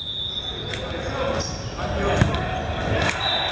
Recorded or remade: recorded